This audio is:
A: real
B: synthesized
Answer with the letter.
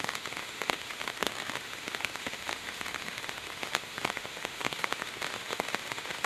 B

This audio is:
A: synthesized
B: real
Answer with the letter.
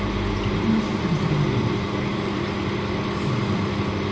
B